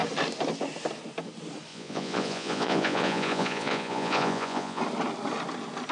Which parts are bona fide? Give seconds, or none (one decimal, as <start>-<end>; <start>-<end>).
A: 0.0-1.7; 4.8-5.9

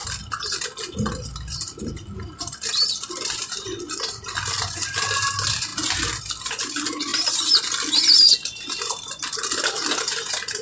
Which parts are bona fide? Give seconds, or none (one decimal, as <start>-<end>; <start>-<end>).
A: 5.1-10.6

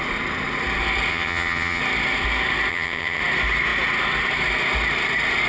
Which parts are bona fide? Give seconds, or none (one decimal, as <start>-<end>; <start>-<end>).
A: 0.0-1.1; 1.8-2.7; 3.2-5.5

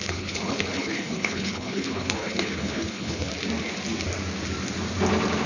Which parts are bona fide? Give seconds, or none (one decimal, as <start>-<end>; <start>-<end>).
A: 3.3-5.5